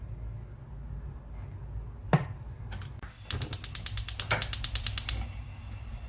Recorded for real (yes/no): yes